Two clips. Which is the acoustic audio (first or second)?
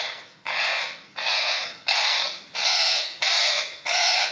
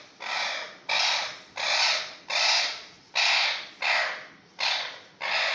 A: second